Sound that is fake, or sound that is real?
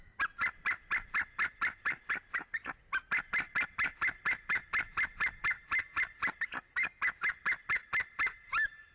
real